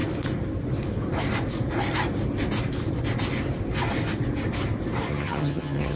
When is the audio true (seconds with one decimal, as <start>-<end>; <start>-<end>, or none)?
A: 0.0-5.1